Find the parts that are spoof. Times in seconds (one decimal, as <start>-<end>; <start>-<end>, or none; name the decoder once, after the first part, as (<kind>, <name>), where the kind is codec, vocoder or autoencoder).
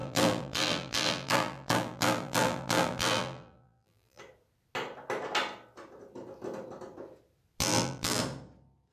0.0-4.2 (vocoder, BigVGAN v2); 7.6-8.2